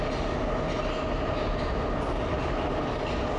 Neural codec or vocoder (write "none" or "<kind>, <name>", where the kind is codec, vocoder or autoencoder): none